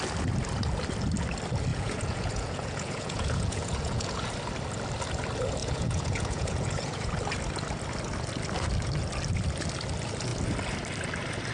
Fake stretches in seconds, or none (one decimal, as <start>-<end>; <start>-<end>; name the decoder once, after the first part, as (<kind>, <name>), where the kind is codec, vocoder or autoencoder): 1.7-4.3 (vocoder, Vocos); 5.6-7.1